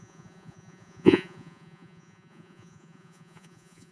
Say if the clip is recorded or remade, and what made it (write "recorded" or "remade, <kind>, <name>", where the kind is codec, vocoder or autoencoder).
remade, vocoder, Vocos